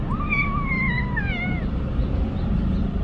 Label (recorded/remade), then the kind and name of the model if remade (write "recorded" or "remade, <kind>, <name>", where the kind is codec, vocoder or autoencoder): recorded